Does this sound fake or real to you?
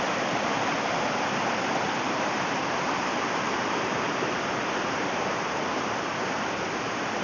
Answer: fake